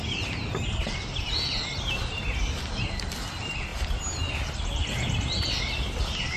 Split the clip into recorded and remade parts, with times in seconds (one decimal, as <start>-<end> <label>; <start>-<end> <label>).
0.0-6.4 recorded